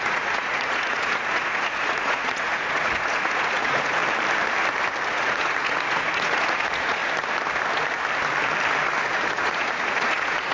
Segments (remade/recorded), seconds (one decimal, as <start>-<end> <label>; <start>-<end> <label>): 0.0-4.0 remade; 4.0-5.1 recorded; 5.1-7.0 remade; 7.0-9.0 recorded; 9.0-10.5 remade